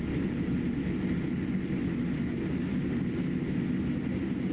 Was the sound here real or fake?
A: real